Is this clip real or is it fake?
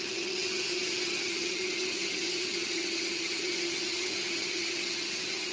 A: fake